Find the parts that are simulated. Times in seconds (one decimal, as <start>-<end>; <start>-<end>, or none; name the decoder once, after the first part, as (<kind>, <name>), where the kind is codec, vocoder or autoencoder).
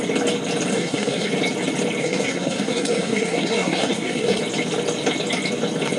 0.7-1.3 (codec, SNAC); 2.0-4.4